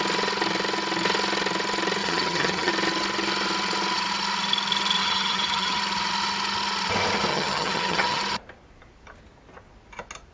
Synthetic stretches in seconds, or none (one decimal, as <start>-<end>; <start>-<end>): 2.0-2.7; 5.0-5.8; 7.3-8.2